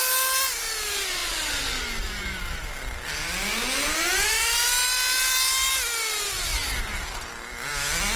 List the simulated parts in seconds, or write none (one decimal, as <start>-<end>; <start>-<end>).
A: none

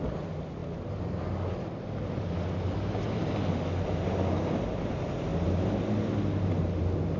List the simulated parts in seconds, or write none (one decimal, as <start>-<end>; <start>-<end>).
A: none

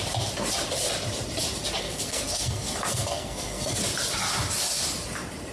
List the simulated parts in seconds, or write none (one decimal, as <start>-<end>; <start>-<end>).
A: 1.8-3.8

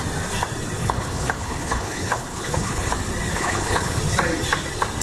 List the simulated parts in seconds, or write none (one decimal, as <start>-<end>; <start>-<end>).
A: 0.8-2.9; 3.3-4.0

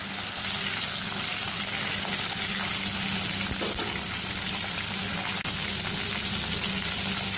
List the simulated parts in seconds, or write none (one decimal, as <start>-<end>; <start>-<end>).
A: none